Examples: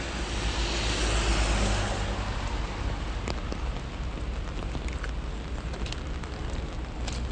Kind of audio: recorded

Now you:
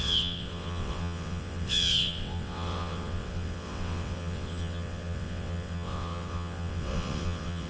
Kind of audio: remade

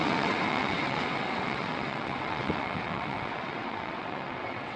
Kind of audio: remade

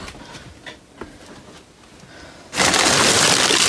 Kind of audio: recorded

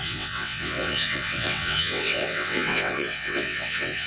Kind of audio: remade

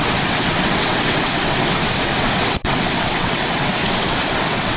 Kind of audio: remade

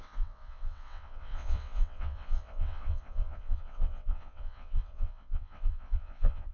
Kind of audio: remade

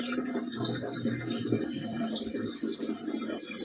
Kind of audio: recorded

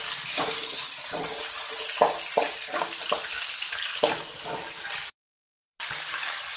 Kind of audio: recorded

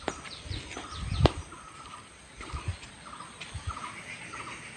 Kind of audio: recorded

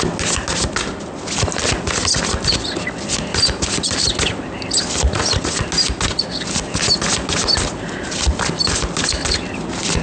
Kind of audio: recorded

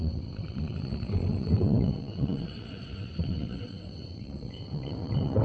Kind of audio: remade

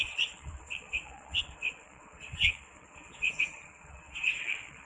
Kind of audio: remade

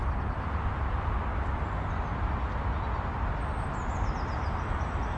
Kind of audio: recorded